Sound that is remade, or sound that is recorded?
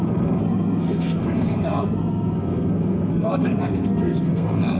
remade